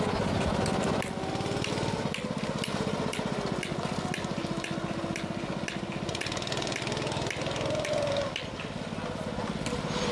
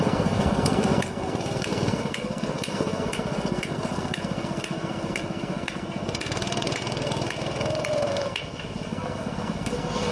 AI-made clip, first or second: second